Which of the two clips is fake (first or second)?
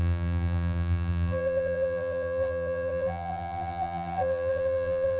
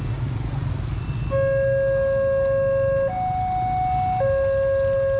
first